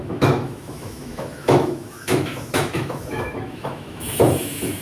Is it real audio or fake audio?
fake